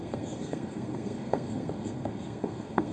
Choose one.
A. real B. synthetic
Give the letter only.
B